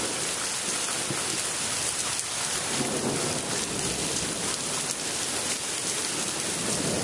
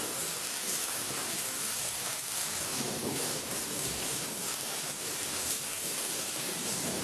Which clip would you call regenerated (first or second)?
second